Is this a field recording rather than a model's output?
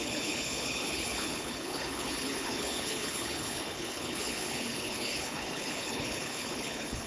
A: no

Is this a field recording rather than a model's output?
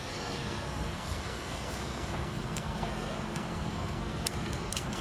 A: no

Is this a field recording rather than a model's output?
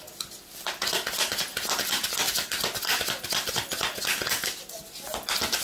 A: yes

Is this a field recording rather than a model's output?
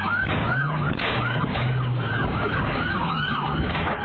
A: no